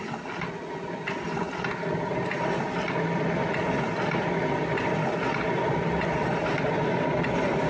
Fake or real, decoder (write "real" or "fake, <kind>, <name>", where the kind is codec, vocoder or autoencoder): real